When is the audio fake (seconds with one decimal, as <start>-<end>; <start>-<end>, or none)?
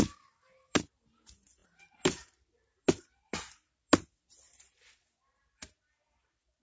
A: none